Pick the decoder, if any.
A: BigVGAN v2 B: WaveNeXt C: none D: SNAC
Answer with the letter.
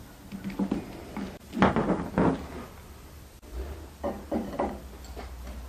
C